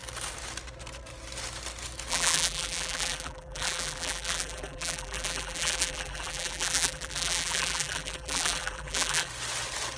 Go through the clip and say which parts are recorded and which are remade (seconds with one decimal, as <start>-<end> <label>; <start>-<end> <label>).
0.0-2.1 recorded; 2.1-9.3 remade; 9.3-10.0 recorded

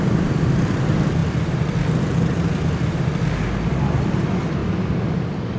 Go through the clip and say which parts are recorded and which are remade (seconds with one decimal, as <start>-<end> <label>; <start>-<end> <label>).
0.0-5.6 recorded

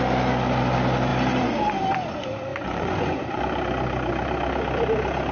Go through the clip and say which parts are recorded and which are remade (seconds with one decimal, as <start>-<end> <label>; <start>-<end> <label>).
0.0-2.5 recorded; 2.5-3.4 remade; 3.4-5.3 recorded

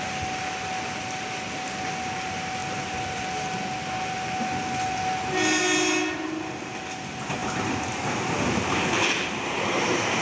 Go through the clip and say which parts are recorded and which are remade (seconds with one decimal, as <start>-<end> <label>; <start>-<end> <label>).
0.0-10.2 recorded

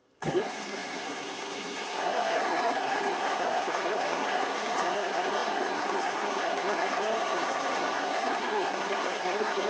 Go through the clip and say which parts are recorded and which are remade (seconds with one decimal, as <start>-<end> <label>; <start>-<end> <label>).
0.0-9.7 remade

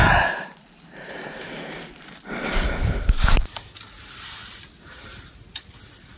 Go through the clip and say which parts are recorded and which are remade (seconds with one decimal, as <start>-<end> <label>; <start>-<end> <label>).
0.0-3.7 remade; 3.7-6.2 recorded

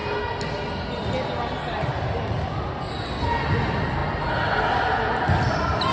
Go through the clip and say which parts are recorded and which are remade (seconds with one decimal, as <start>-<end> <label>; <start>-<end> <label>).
0.0-5.9 recorded